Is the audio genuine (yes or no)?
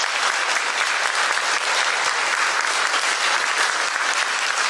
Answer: yes